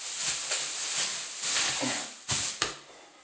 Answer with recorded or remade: recorded